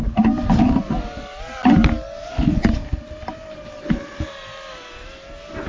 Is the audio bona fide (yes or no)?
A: yes